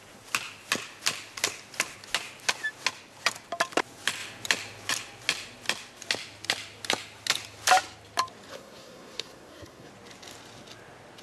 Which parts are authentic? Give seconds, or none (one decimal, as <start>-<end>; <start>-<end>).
0.0-8.5; 9.9-11.2